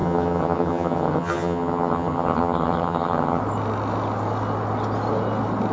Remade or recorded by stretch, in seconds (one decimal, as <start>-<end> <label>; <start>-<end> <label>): 0.0-3.4 remade; 3.4-5.7 recorded